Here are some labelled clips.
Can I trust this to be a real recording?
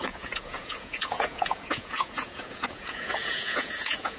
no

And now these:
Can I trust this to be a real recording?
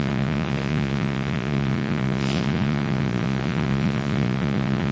no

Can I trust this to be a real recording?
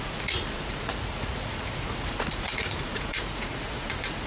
no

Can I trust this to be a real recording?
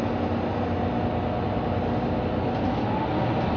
yes